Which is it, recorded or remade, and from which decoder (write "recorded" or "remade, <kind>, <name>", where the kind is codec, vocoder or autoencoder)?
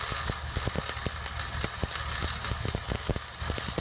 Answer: recorded